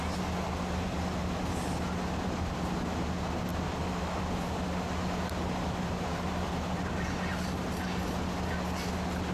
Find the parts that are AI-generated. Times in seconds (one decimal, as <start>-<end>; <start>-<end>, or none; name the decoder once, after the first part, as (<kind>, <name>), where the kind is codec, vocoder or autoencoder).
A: 6.1-6.9 (vocoder, BigVGAN v2)